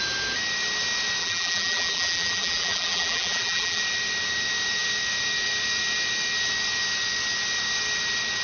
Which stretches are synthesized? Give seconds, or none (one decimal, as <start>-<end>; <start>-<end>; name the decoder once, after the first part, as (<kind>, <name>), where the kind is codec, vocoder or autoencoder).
1.2-3.8 (vocoder, BigVGAN v2)